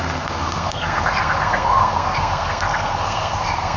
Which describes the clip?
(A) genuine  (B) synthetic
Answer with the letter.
B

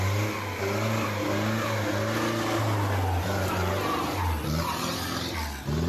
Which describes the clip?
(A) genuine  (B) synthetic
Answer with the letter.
A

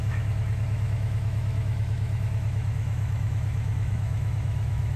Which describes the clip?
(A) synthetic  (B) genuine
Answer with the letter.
A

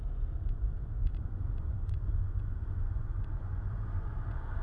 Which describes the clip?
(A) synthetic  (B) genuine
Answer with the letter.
A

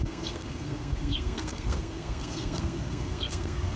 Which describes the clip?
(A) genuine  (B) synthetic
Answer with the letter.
B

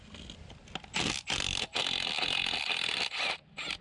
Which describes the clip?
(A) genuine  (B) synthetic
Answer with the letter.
A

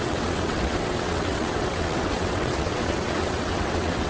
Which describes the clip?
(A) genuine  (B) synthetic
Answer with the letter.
B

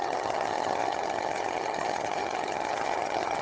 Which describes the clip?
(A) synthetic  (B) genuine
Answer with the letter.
A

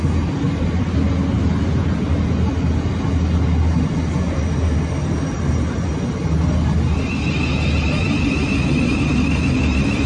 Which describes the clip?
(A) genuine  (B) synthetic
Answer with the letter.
A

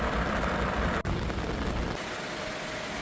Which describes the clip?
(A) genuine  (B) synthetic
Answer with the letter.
A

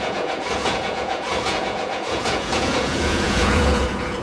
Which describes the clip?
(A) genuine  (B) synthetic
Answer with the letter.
B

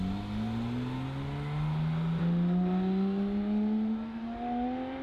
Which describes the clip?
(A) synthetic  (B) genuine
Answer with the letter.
B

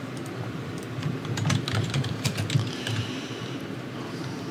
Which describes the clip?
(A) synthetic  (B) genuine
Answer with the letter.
A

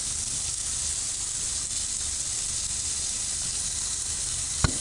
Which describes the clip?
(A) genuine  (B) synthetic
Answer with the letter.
A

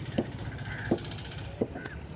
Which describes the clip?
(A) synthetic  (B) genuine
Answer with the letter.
B